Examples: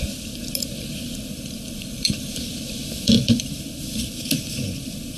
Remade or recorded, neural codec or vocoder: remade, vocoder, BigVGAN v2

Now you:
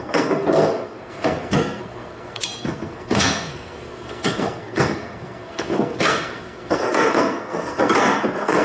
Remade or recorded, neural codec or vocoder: remade, codec, SNAC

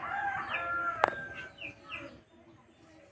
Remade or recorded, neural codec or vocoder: recorded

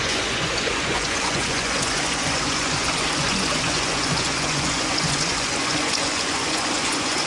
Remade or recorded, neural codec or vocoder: remade, vocoder, Vocos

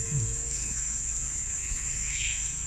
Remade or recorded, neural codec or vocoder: remade, codec, SNAC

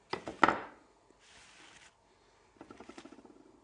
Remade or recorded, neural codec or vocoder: recorded